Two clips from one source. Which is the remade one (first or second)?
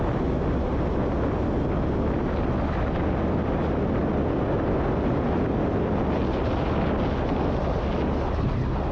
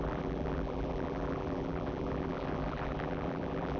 second